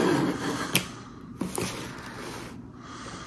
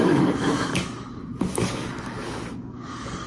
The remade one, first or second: second